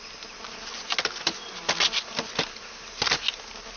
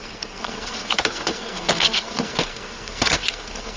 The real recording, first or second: first